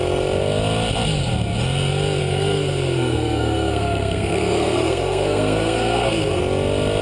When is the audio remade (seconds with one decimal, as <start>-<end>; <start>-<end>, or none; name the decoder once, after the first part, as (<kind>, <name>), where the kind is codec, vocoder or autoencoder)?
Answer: 2.2-6.4 (codec, SNAC)